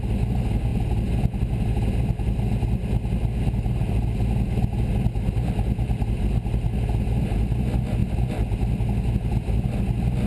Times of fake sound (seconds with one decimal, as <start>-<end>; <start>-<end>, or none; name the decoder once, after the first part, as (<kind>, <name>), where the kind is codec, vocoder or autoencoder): none